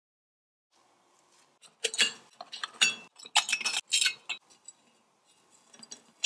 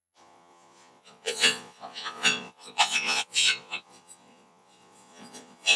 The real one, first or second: first